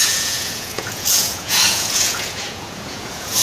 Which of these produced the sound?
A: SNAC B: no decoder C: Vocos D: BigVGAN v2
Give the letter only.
C